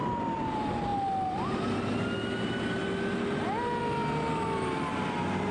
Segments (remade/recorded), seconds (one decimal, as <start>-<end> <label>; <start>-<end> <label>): 0.0-5.5 recorded